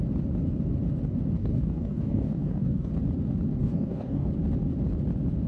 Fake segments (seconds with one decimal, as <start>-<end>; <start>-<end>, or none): 1.4-2.9; 3.6-4.3